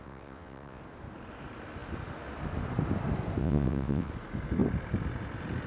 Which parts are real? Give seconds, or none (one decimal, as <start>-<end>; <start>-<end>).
0.8-3.4; 4.1-5.7

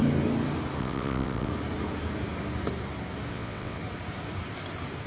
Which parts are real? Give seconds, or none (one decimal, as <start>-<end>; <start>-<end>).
0.0-0.8; 1.5-3.3; 3.8-5.1

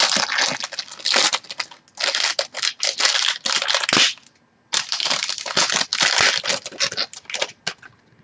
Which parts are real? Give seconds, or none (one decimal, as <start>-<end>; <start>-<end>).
0.0-8.2

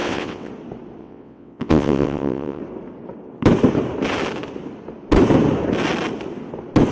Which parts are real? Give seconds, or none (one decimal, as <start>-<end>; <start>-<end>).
0.5-1.0; 2.6-6.9

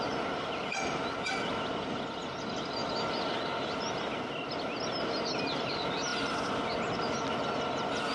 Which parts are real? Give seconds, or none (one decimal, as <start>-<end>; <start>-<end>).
0.0-8.1